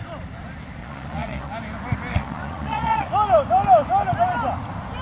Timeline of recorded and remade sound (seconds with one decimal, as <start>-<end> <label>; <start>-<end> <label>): 0.0-0.8 recorded; 0.8-1.5 remade; 1.5-2.1 recorded; 2.1-3.1 remade; 3.1-5.0 recorded

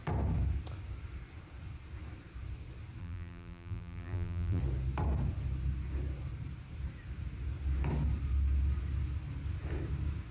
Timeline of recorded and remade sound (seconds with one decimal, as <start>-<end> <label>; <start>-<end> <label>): 0.0-3.0 recorded; 3.0-4.6 remade; 4.6-10.3 recorded